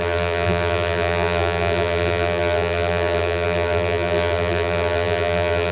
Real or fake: fake